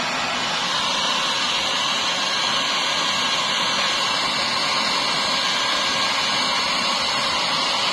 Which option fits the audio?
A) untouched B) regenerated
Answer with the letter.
A